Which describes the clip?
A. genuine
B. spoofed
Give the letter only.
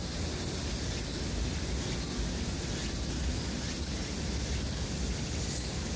A